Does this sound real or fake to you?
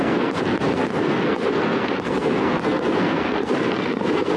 fake